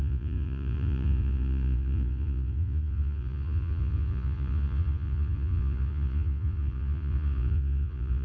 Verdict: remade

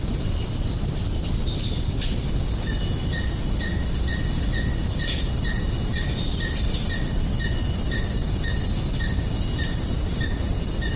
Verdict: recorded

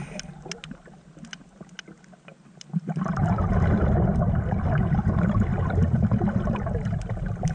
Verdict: recorded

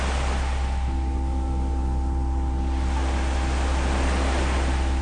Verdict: recorded